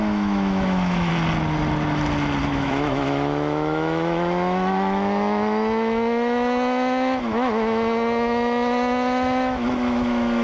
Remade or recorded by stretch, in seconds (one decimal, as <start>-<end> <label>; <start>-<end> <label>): 0.0-1.1 remade; 1.1-2.4 recorded; 2.4-10.4 remade